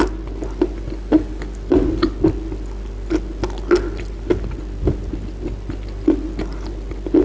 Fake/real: real